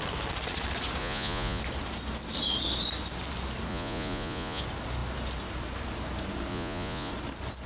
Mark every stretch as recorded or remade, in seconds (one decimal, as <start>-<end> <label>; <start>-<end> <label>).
0.0-1.0 recorded; 1.0-1.6 remade; 1.6-3.7 recorded; 3.7-4.6 remade; 4.6-6.5 recorded; 6.5-7.1 remade; 7.1-7.7 recorded